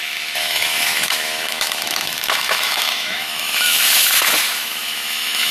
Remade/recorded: remade